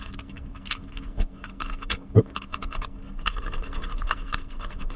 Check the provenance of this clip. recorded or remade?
remade